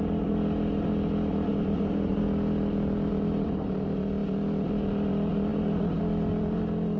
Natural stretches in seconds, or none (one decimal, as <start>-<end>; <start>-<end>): 0.0-1.5; 2.2-5.5; 6.0-7.0